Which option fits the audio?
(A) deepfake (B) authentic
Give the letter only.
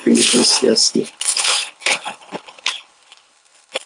A